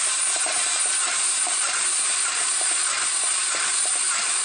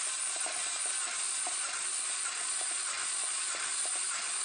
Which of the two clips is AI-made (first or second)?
first